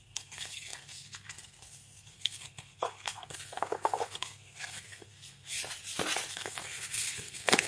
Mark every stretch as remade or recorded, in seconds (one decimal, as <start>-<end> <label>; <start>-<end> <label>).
0.0-5.6 remade; 5.6-6.3 recorded; 6.3-7.7 remade